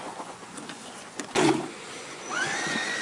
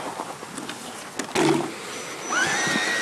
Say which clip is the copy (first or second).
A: first